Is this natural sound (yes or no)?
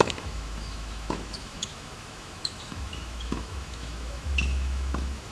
no